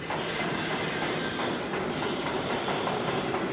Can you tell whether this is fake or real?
real